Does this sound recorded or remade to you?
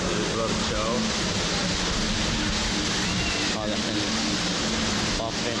recorded